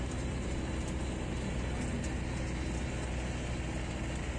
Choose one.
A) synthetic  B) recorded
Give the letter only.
B